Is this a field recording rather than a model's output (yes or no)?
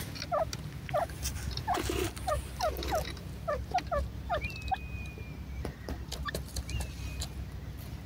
yes